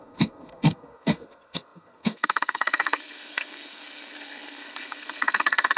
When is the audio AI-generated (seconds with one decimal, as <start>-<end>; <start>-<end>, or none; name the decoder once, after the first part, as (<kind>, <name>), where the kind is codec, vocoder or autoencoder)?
0.0-5.8 (codec, SNAC)